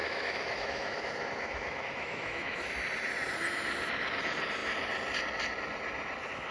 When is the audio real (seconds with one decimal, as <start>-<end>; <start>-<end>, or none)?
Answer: 2.7-6.5